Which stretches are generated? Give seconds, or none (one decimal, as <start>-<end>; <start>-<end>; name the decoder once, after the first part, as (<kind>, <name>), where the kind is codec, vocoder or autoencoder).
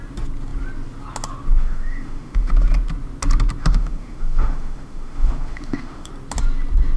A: 1.5-2.5 (autoencoder, DAC-VAE); 3.6-6.1